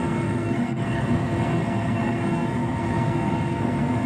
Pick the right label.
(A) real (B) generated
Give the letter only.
B